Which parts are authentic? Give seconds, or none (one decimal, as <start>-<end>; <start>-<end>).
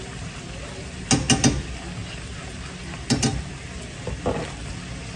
0.0-5.2